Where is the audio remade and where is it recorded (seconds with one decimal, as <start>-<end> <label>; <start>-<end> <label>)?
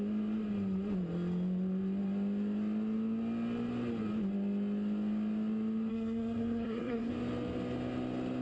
0.0-5.9 recorded; 5.9-7.1 remade; 7.1-8.4 recorded